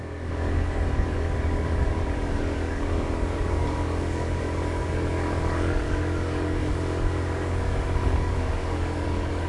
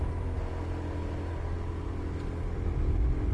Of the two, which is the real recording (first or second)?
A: second